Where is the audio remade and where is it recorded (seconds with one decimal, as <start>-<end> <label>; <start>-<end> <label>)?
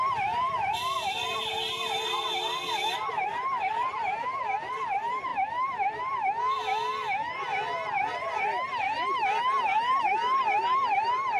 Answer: 0.0-4.1 remade; 4.1-4.7 recorded; 4.7-5.3 remade; 5.3-10.0 recorded; 10.0-11.4 remade